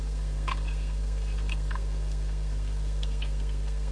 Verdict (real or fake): fake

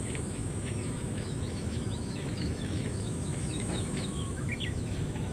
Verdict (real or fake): fake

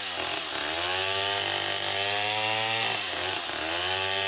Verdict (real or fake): real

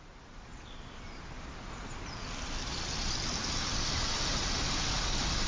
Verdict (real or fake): real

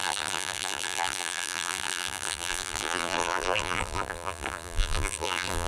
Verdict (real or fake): fake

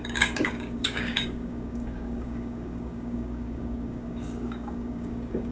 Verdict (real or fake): fake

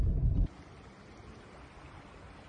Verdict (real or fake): real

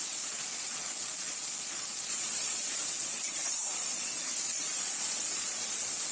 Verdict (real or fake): fake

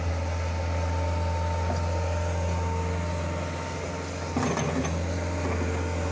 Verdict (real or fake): real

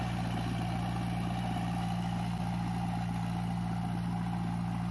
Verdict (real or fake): real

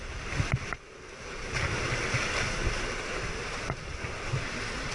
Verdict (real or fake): real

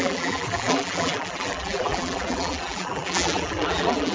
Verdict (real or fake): fake